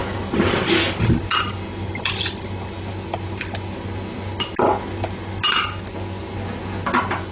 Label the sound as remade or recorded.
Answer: recorded